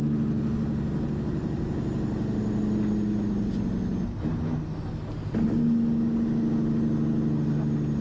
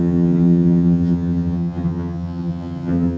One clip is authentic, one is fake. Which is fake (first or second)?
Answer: second